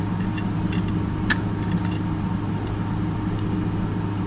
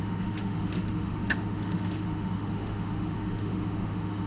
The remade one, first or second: second